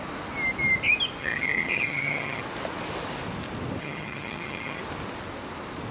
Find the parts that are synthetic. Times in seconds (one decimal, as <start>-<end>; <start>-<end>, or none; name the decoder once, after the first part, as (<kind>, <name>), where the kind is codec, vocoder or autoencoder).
1.2-2.4 (vocoder, HiFi-GAN); 3.8-4.8